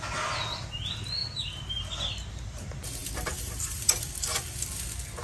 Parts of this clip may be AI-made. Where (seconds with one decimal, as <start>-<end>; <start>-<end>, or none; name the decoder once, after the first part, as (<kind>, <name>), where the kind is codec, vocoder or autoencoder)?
3.0-4.7 (vocoder, BigVGAN v2)